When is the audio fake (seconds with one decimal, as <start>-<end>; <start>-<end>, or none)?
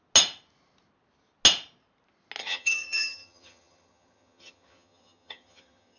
2.4-6.0